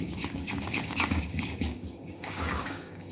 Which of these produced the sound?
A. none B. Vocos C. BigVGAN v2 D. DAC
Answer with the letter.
D